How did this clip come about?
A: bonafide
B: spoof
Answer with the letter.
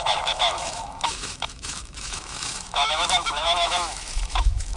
B